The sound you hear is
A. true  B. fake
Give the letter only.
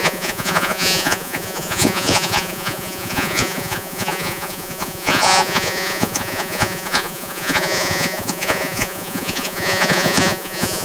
B